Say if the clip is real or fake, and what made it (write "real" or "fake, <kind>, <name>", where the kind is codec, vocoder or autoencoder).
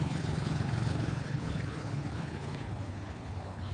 fake, codec, HILCodec